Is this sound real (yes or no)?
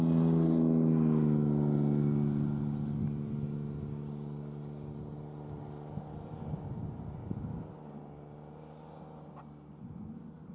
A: yes